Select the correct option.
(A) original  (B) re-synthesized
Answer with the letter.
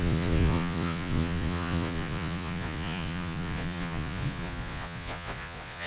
B